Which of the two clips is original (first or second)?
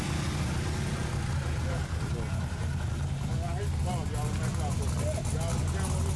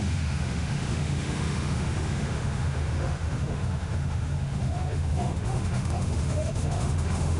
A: first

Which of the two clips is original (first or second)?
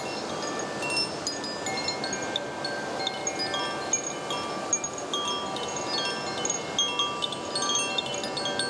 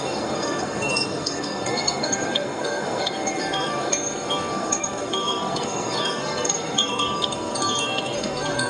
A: first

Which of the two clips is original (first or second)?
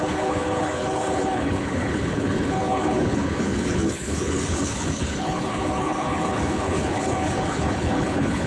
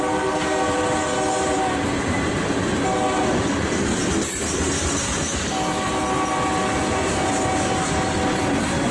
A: second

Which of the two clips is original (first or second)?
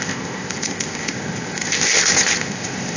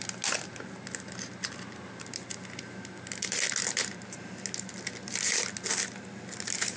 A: second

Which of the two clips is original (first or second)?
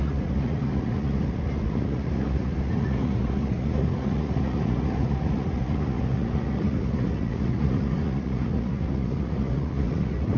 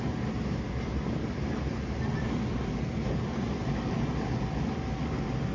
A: second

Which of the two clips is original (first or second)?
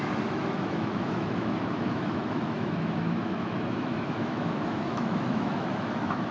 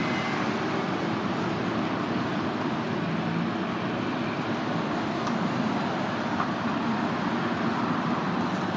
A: second